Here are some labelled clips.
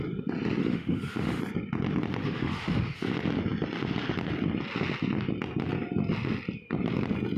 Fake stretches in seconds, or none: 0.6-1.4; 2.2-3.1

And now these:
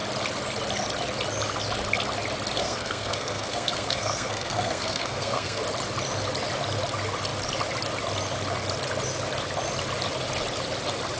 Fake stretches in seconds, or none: 2.6-5.6

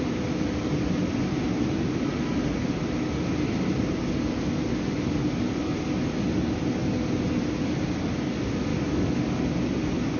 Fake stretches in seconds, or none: 8.7-9.2

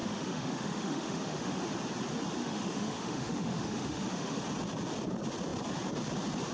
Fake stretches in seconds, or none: 0.0-1.6; 2.4-4.4

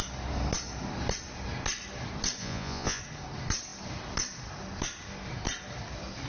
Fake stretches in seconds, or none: 2.4-3.0

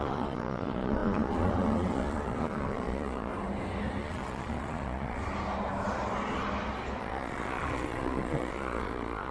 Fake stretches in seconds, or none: 0.0-3.3; 4.0-5.2; 7.0-9.3

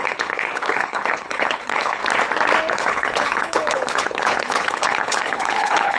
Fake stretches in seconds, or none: 0.0-2.0; 2.7-6.0

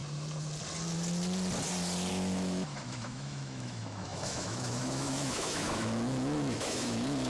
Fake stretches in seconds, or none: 2.1-7.3